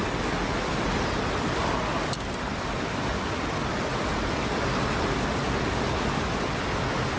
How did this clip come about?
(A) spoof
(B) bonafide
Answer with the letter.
B